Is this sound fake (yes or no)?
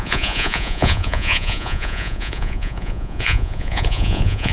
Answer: yes